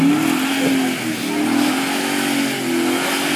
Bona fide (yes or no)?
yes